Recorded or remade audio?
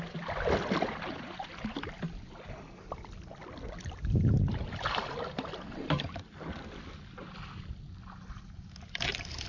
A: recorded